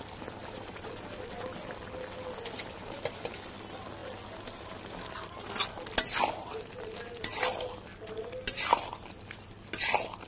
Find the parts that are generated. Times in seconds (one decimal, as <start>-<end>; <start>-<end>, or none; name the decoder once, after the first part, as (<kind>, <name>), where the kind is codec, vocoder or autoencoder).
0.4-0.9 (vocoder, BigVGAN v2)

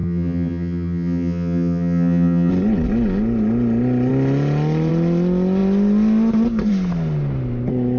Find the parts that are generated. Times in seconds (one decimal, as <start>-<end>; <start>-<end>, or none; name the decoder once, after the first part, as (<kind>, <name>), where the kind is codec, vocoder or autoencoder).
0.0-2.5 (vocoder, HiFi-GAN)

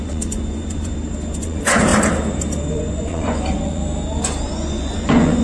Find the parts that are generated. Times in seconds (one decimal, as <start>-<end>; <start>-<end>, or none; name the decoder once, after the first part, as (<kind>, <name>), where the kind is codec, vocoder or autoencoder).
0.0-0.9 (vocoder, Vocos); 1.4-1.9; 2.7-3.8; 4.4-5.4

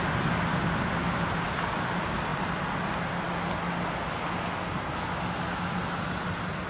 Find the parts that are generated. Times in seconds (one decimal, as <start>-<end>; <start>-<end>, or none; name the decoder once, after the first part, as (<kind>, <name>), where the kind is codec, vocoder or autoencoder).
none

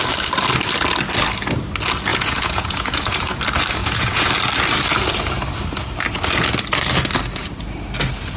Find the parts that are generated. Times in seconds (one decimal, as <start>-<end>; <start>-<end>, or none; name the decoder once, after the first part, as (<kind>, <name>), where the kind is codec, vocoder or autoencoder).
2.1-3.4 (vocoder, Vocos); 3.8-4.3

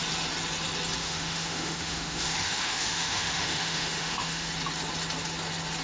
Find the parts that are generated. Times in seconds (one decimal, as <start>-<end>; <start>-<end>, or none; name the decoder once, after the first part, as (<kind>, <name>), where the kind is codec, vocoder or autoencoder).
1.0-4.5 (autoencoder, DAC-VAE)

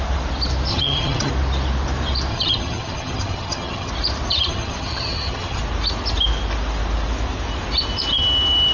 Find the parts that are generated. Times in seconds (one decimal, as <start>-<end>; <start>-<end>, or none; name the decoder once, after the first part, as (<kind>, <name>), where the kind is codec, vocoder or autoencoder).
0.7-1.3 (vocoder, HiFi-GAN); 2.3-3.9; 4.3-5.6

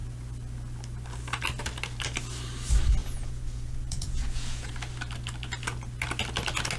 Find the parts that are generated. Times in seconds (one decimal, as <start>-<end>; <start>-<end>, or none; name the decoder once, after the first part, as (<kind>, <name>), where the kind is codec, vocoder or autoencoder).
3.0-4.7 (vocoder, Vocos)